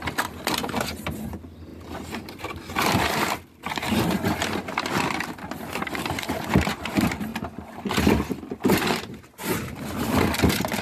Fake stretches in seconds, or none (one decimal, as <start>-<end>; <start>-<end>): 7.3-7.8